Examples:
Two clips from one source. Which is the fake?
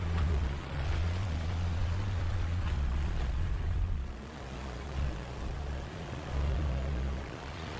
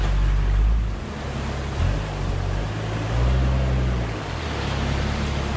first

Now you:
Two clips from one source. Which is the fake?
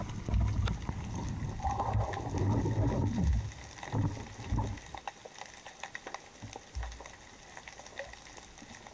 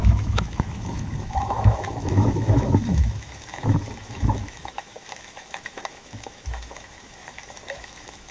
second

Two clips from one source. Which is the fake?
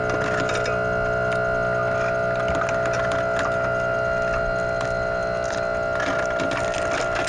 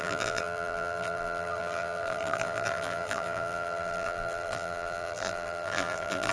second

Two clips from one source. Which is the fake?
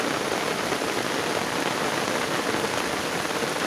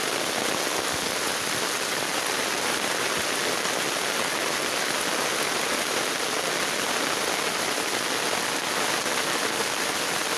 first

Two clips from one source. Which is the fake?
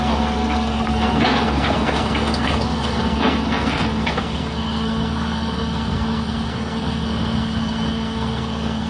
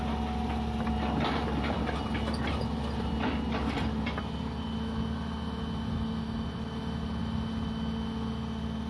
first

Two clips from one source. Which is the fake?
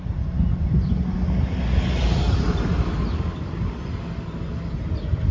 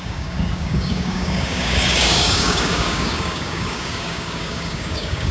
second